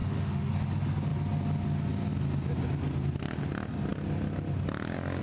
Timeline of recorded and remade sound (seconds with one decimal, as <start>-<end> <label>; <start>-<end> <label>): 0.0-0.5 remade; 0.5-5.2 recorded